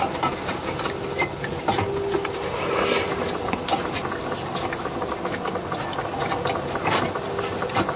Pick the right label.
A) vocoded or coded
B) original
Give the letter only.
B